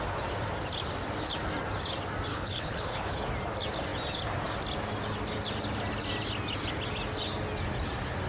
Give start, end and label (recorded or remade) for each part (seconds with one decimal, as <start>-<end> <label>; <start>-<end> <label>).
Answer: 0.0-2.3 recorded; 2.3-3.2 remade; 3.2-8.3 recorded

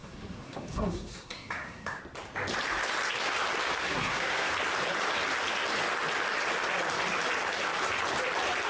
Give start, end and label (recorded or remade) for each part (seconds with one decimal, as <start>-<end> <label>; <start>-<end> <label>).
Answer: 0.0-2.0 remade; 2.0-3.8 recorded; 3.8-4.5 remade; 4.5-8.7 recorded

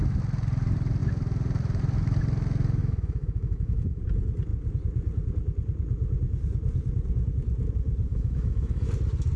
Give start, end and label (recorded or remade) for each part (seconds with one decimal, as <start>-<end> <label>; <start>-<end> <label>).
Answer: 0.0-2.8 recorded; 2.8-4.0 remade; 4.0-8.1 recorded; 8.1-8.9 remade; 8.9-9.4 recorded

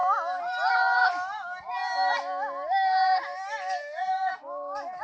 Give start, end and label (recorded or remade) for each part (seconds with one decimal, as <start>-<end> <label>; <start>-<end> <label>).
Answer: 0.0-5.0 recorded

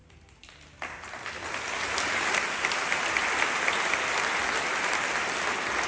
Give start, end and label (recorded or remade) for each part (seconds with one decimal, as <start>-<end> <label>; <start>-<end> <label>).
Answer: 0.0-5.9 recorded

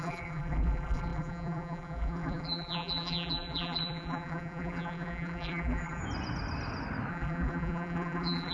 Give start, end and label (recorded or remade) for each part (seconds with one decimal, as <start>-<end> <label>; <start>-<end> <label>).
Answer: 0.0-6.0 remade; 6.0-7.1 recorded; 7.1-8.5 remade